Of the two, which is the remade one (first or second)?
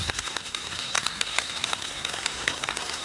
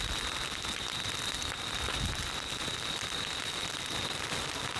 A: first